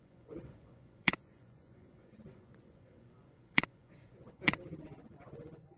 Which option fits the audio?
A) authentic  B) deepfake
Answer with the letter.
B